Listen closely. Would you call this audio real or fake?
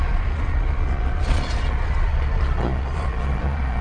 fake